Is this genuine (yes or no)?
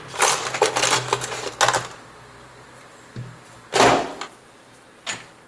yes